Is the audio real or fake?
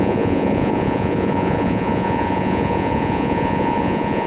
fake